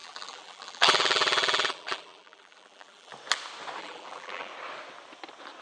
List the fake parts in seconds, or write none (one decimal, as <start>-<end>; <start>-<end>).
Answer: 0.0-3.1; 3.8-4.5